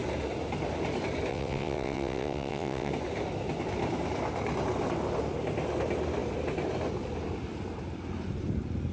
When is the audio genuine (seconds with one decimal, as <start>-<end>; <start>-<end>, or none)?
0.0-1.3; 2.9-8.9